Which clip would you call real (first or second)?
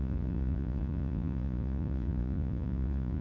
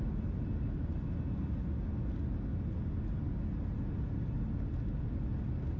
second